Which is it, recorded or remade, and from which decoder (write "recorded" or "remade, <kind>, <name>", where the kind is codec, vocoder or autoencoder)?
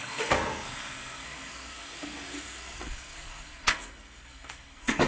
remade, codec, SNAC